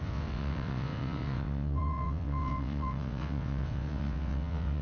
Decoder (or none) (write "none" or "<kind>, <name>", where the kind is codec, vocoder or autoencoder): vocoder, WaveNeXt